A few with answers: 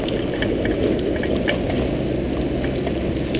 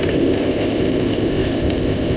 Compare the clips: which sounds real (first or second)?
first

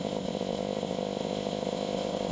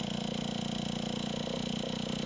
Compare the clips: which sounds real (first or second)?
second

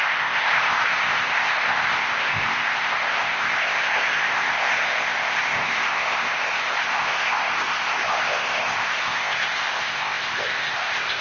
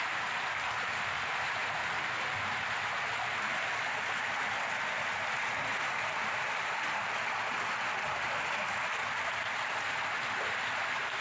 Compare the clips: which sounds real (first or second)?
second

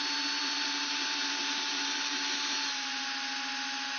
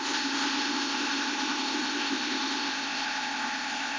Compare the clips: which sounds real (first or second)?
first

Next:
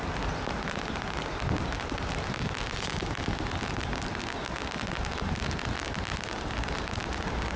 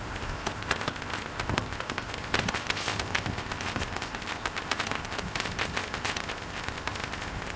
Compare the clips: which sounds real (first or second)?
first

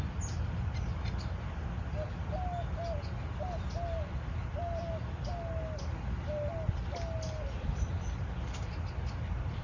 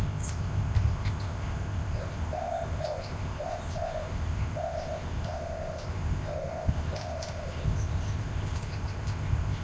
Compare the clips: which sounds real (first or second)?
first